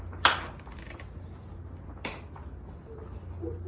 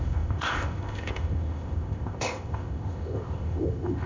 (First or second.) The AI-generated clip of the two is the second